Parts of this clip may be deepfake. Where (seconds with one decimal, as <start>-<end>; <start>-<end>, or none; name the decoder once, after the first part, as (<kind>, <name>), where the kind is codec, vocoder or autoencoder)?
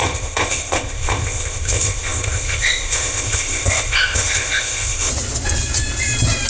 0.0-5.1 (codec, ZipCodec)